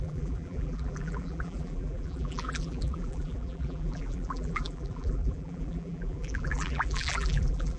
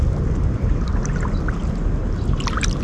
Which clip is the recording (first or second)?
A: second